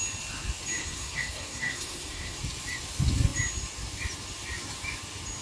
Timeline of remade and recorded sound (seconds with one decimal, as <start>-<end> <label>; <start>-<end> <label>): 0.0-0.8 recorded; 0.8-2.4 remade; 2.4-5.4 recorded